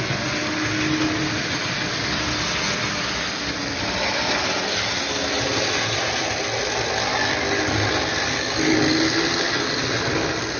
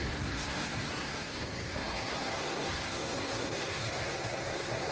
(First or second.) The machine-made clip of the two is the second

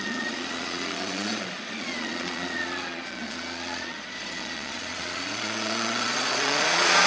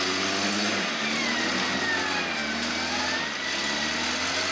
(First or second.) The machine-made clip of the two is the first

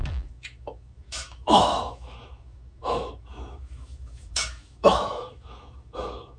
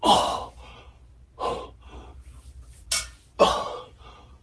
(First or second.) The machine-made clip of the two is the first